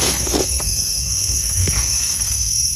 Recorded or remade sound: remade